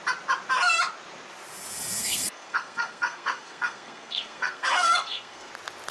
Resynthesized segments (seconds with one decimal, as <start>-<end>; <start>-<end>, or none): 2.0-5.5